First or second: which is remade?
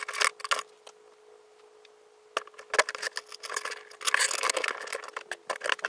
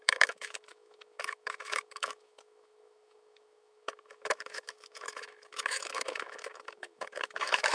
second